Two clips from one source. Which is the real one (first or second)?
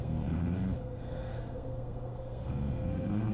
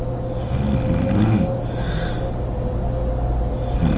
second